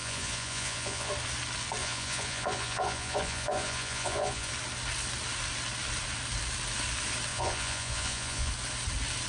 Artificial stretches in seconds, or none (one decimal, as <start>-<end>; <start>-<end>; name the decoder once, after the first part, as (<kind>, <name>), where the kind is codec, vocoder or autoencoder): 0.0-1.1 (vocoder, Vocos); 1.8-4.5; 7.3-8.5